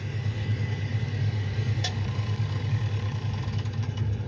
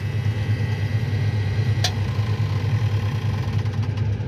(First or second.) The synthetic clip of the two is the first